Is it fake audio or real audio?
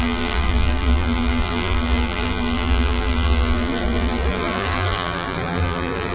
fake